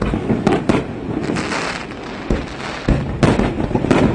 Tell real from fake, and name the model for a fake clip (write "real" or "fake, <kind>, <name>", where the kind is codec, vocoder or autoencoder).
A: real